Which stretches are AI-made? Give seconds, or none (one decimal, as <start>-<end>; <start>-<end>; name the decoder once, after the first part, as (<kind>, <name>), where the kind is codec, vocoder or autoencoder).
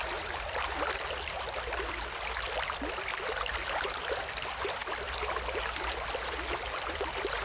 0.0-7.4 (vocoder, BigVGAN v2)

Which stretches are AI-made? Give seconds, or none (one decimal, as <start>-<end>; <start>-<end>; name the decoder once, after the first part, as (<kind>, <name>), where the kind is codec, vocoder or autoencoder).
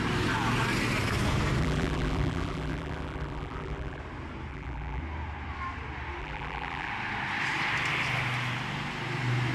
1.6-4.0 (vocoder, BigVGAN v2); 4.5-5.0; 6.2-6.9